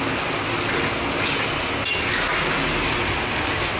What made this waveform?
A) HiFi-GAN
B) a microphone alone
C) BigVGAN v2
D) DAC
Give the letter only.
B